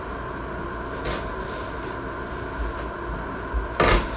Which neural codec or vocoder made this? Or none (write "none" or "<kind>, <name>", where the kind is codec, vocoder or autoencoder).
none